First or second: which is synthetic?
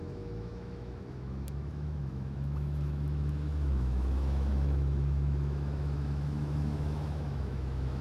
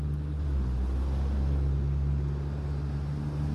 first